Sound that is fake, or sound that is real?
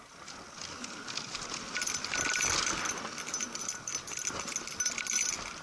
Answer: real